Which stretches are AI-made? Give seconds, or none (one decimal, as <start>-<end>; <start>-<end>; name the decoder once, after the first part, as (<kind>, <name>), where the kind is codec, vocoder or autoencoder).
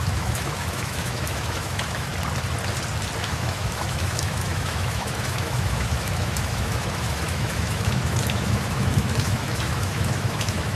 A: 0.0-2.1 (autoencoder, DAC-VAE); 3.2-10.8